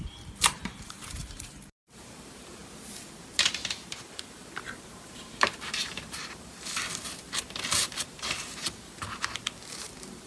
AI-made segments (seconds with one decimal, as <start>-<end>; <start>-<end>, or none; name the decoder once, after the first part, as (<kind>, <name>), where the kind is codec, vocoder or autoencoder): 0.0-2.6 (vocoder, BigVGAN v2); 3.7-10.3